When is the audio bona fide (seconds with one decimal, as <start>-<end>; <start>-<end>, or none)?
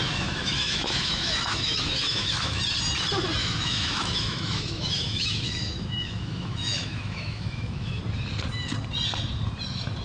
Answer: 2.6-3.4; 8.0-10.0